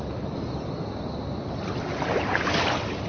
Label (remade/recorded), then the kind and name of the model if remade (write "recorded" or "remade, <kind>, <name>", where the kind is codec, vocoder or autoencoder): recorded